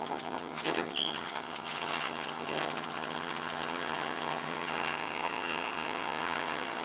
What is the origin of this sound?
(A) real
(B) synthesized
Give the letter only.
B